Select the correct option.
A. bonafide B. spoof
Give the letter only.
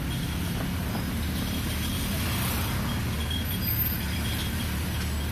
A